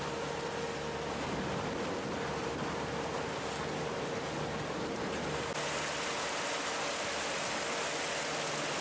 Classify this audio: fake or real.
real